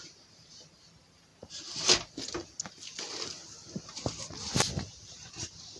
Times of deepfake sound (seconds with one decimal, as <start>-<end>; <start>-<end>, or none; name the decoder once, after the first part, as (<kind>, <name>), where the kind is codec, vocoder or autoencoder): 0.0-1.3 (vocoder, BigVGAN v2); 4.6-5.8